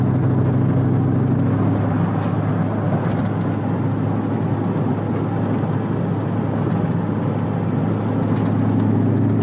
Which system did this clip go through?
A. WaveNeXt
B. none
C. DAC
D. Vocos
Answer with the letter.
B